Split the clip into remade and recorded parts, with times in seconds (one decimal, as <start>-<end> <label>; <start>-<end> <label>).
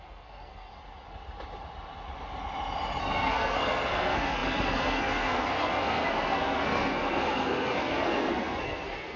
0.0-0.7 remade; 0.7-3.0 recorded; 3.0-9.2 remade